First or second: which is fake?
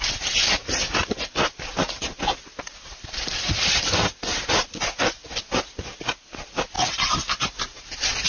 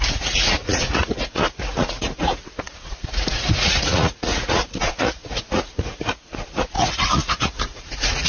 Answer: second